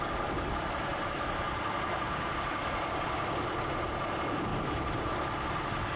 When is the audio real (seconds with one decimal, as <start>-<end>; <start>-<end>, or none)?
0.0-4.5; 5.1-6.0